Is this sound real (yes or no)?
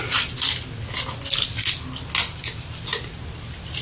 yes